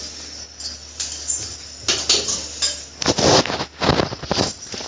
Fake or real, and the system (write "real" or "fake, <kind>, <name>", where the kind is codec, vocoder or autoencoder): real